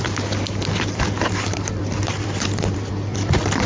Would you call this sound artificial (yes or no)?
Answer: yes